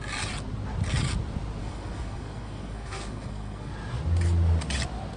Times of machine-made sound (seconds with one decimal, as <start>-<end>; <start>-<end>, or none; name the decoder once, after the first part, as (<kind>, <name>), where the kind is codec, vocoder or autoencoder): 1.6-3.7 (codec, SNAC)